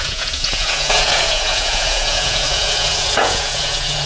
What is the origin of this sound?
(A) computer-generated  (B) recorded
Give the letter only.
A